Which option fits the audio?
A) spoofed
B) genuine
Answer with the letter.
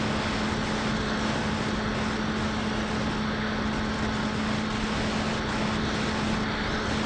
B